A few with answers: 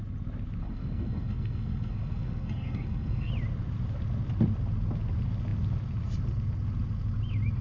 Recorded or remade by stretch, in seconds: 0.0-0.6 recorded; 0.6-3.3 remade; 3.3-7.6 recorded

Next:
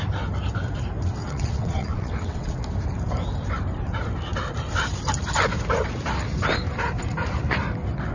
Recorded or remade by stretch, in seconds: 0.0-1.2 recorded; 1.2-2.6 remade; 2.6-8.1 recorded

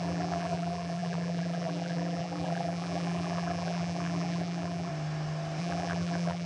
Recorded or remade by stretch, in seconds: 0.0-4.9 remade; 4.9-5.6 recorded; 5.6-6.5 remade

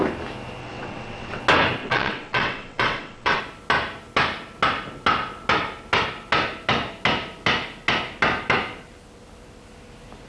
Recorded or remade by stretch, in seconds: 0.0-0.6 recorded; 0.6-1.4 remade; 1.4-1.8 recorded; 1.8-3.4 remade; 3.4-10.3 recorded

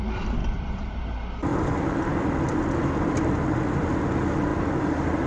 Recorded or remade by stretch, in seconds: 0.0-0.4 recorded; 0.4-1.0 remade; 1.0-1.5 recorded; 1.5-4.0 remade; 4.0-4.5 recorded; 4.5-5.3 remade

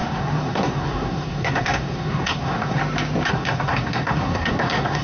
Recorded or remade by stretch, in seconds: 0.0-2.8 remade; 2.8-3.3 recorded; 3.3-5.0 remade

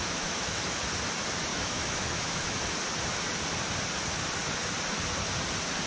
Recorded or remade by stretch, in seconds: 0.0-0.8 remade; 0.8-1.5 recorded; 1.5-2.7 remade; 2.7-5.9 recorded